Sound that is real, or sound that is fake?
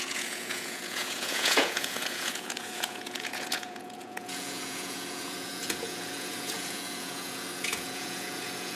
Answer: fake